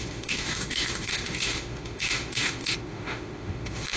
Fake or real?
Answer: fake